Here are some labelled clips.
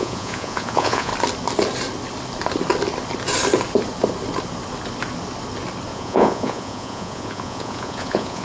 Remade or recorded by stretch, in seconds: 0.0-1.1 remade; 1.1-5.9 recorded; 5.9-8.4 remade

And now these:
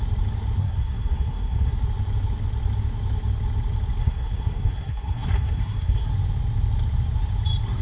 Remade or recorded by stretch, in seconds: 0.0-0.6 recorded; 0.6-1.7 remade; 1.7-4.0 recorded; 4.0-6.1 remade; 6.1-7.8 recorded

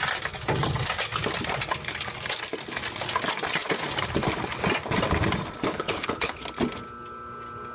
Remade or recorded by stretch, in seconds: 0.0-5.7 recorded; 5.7-6.4 remade; 6.4-7.7 recorded

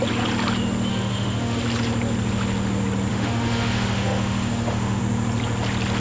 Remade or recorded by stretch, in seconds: 0.0-0.9 recorded; 0.9-1.6 remade; 1.6-3.1 recorded; 3.1-5.0 remade; 5.0-6.0 recorded

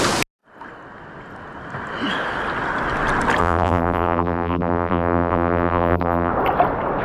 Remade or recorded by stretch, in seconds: 0.0-3.4 recorded; 3.4-6.3 remade; 6.3-7.0 recorded